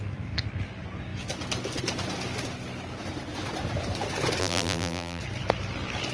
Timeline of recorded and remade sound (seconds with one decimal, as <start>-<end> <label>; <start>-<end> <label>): 0.0-4.4 recorded; 4.4-5.2 remade; 5.2-6.1 recorded